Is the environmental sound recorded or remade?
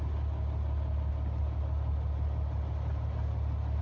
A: recorded